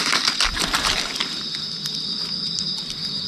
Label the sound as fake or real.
real